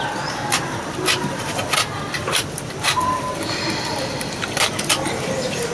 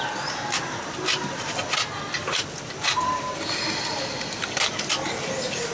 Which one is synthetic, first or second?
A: first